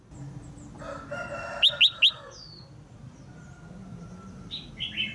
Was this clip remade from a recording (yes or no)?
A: no